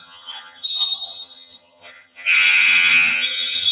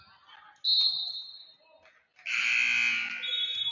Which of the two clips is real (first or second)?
second